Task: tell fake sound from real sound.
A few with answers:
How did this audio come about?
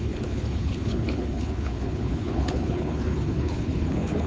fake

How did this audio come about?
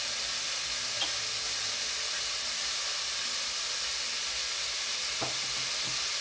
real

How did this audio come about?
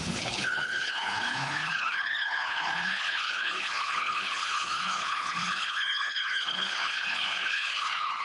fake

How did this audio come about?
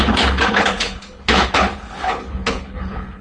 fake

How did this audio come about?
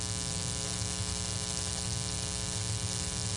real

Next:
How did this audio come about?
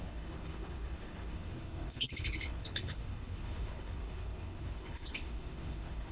fake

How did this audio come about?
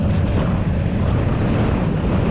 real